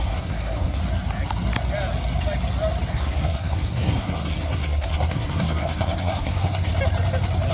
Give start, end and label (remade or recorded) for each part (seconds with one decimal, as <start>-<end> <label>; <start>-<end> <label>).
0.0-0.8 remade; 0.8-2.9 recorded; 2.9-6.7 remade; 6.7-7.5 recorded